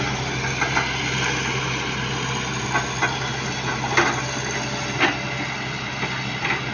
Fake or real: real